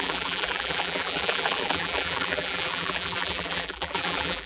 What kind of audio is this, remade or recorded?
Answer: remade